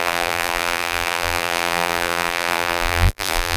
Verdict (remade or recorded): remade